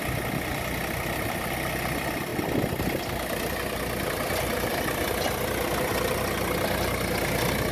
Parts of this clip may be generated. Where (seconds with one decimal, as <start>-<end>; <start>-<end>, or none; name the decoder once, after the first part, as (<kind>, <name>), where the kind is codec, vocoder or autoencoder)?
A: none